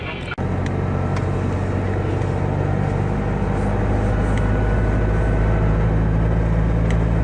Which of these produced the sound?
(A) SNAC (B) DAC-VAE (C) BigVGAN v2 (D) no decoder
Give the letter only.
D